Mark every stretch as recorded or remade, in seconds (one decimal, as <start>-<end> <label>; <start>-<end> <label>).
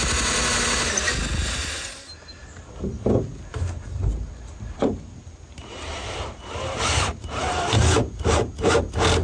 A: 0.0-2.1 recorded; 2.1-3.1 remade; 3.1-3.5 recorded; 3.5-7.7 remade; 7.7-9.2 recorded